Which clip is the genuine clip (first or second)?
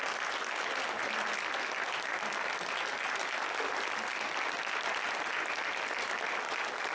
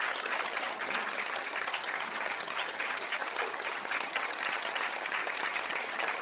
first